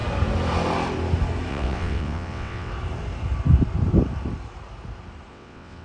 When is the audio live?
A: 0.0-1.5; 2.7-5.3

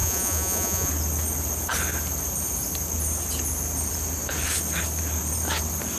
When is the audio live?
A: 0.9-6.0

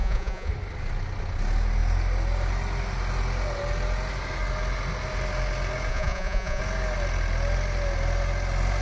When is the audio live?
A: 0.5-5.9; 6.6-8.8

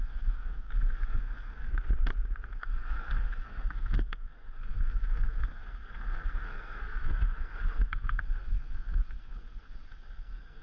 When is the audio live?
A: 1.7-2.5

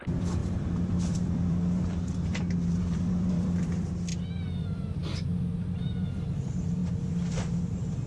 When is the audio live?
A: 4.1-4.6; 5.0-5.9; 6.8-7.3

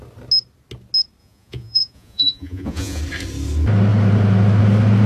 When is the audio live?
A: 0.0-1.2; 3.0-5.1

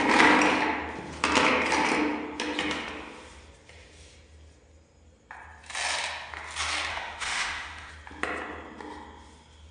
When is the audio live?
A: 0.0-6.9; 7.9-9.7

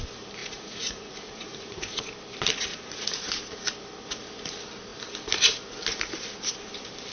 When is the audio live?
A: 0.0-0.4; 2.0-2.7; 3.3-7.1